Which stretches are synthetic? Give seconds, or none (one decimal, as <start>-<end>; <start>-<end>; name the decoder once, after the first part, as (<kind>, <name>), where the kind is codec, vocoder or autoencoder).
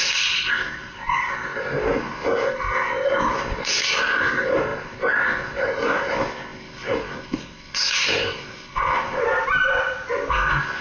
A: 0.0-9.2 (codec, SNAC); 10.3-10.8